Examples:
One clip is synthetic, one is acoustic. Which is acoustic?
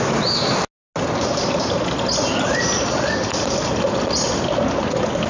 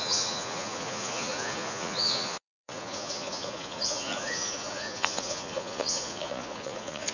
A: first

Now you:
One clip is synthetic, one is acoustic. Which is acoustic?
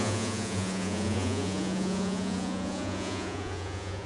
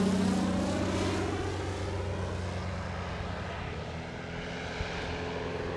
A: second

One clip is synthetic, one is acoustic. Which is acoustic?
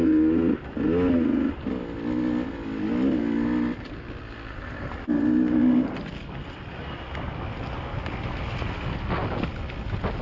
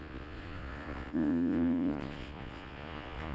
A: first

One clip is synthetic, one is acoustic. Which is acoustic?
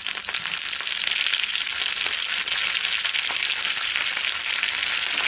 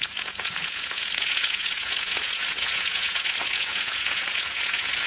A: first